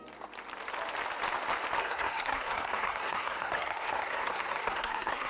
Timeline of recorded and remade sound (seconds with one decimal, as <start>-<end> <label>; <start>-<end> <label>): 0.0-1.8 recorded; 1.8-5.3 remade